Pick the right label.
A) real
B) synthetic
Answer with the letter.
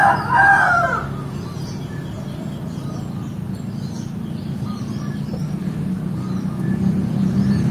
A